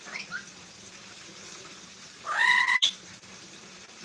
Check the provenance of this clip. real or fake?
fake